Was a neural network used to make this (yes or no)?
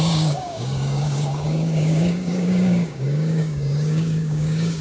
yes